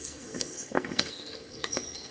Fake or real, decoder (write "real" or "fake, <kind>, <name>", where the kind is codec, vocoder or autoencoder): fake, codec, SNAC